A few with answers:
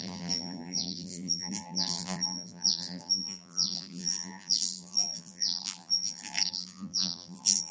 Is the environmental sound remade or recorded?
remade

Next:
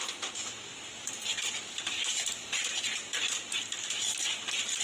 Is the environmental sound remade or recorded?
remade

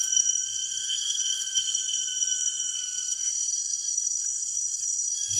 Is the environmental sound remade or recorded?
remade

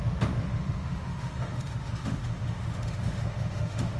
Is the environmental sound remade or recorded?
remade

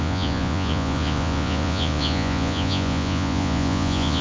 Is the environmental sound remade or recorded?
remade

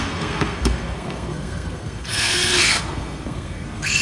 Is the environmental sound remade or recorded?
remade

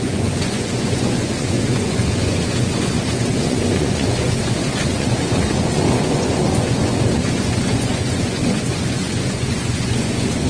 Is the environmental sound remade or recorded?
remade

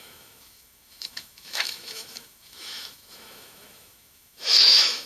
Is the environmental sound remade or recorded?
remade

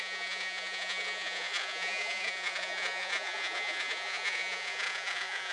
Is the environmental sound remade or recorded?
remade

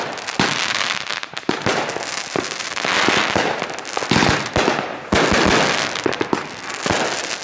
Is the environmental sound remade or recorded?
recorded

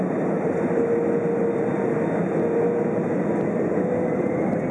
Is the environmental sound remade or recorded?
recorded